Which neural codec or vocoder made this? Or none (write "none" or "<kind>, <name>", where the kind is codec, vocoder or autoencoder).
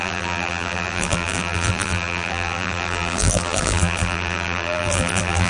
vocoder, BigVGAN v2